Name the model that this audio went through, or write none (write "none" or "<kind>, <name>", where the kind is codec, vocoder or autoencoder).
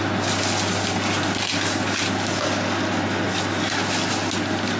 none